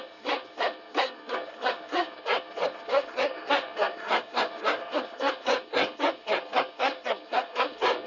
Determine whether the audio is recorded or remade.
remade